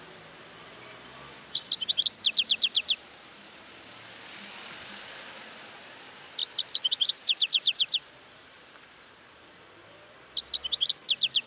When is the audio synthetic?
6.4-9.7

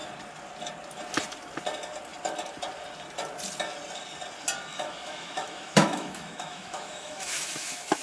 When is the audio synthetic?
4.7-8.0

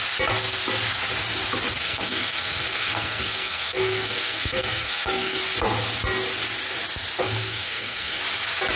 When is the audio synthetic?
1.8-5.4; 7.2-8.2

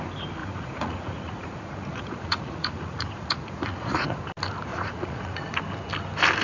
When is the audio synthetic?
0.4-4.2; 4.7-5.5

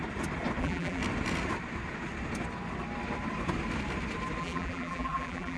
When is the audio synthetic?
0.6-1.0; 4.4-5.6